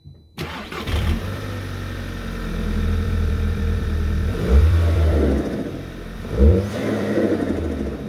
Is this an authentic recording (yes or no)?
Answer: no